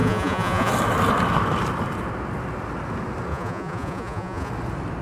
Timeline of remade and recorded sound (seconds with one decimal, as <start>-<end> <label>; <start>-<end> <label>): 0.0-0.7 remade; 0.7-3.3 recorded; 3.3-4.5 remade; 4.5-5.0 recorded